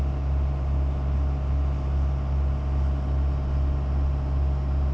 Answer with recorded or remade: recorded